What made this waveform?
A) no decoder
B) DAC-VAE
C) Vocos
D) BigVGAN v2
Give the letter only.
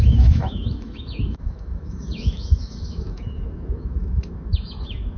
B